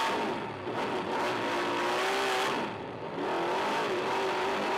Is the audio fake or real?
real